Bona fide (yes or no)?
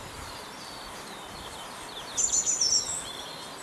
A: yes